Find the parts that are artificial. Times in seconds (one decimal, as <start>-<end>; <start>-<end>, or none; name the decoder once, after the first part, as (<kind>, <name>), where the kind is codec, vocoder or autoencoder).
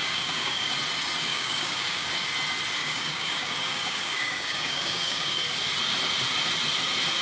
0.0-0.7 (codec, DAC); 1.3-2.1; 2.8-5.4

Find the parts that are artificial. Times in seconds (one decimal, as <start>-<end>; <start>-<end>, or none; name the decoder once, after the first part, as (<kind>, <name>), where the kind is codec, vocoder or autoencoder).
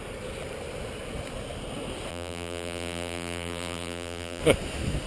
2.1-4.4 (vocoder, BigVGAN v2)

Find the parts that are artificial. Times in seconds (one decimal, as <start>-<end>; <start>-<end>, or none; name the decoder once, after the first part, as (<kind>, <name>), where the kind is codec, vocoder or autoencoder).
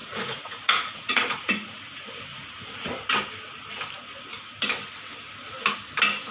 0.0-1.8 (vocoder, Vocos); 2.3-2.9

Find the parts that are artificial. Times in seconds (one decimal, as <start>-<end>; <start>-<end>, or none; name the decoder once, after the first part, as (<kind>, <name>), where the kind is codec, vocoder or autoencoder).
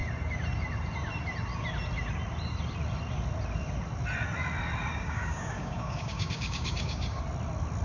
4.9-7.2 (codec, DAC)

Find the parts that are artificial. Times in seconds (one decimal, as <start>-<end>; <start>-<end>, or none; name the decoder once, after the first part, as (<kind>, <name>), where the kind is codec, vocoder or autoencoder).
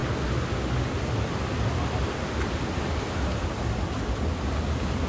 none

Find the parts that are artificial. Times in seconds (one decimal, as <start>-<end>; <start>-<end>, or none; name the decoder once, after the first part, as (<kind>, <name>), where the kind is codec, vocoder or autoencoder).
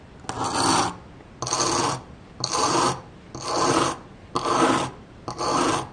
none